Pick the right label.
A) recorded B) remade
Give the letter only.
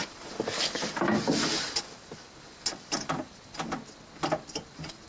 A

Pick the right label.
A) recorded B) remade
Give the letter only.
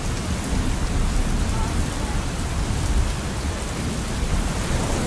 A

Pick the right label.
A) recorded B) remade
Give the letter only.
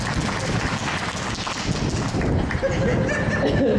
A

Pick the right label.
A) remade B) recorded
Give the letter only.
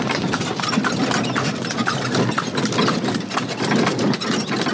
B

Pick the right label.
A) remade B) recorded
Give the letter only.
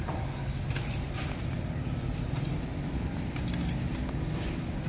B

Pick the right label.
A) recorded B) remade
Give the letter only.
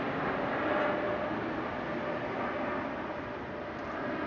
A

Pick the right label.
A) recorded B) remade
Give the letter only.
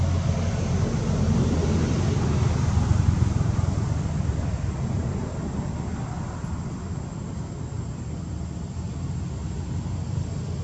A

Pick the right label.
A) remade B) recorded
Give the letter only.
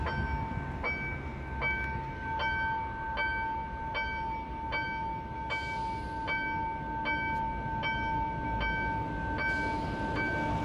B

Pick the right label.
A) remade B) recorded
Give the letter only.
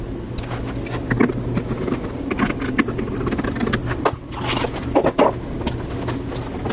B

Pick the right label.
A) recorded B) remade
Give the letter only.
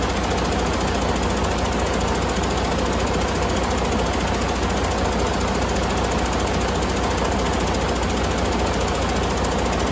A